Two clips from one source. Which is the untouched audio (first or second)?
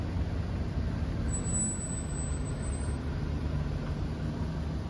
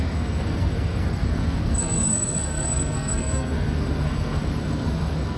first